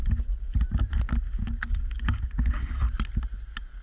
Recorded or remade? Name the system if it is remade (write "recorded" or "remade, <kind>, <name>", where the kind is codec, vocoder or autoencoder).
recorded